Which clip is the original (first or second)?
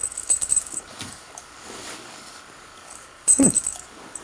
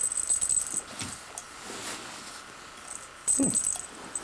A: second